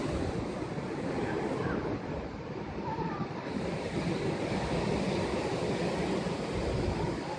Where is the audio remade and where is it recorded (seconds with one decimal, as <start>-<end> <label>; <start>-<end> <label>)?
0.0-2.3 recorded; 2.3-5.5 remade; 5.5-7.4 recorded